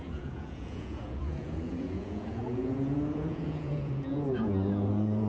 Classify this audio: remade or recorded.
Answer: remade